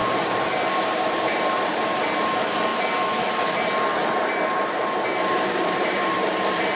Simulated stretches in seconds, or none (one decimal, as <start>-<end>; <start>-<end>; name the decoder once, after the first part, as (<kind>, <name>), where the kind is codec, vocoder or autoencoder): 0.0-2.7 (vocoder, BigVGAN v2); 4.1-6.8